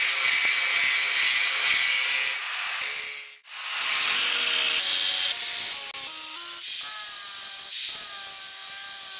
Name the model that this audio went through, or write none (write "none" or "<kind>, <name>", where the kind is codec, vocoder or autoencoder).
none